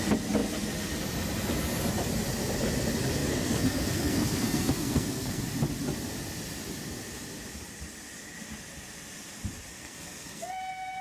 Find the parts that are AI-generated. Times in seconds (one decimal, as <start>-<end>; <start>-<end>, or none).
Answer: 3.2-5.4; 9.7-10.6